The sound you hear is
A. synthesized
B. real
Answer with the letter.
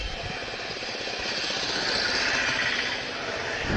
B